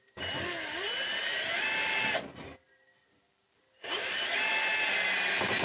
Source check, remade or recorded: recorded